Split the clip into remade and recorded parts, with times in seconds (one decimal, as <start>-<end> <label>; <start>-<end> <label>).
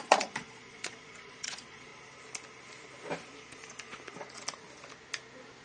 0.0-1.9 remade; 1.9-5.6 recorded